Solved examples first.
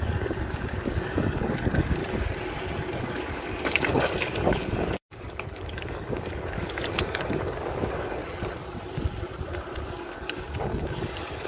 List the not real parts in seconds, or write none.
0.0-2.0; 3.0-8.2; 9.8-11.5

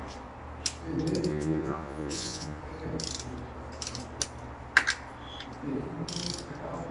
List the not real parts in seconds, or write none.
1.3-2.6

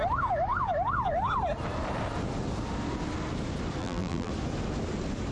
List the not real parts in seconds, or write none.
3.8-4.3

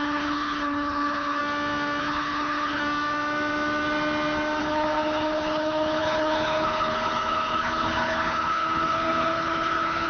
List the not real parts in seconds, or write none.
0.0-1.4; 2.0-2.8; 4.6-10.1

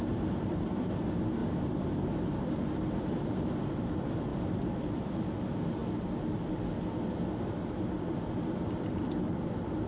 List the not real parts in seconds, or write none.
0.0-1.4; 2.3-5.8; 7.9-9.9

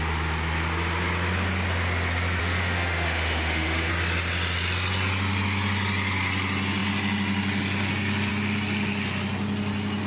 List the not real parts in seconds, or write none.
2.4-3.9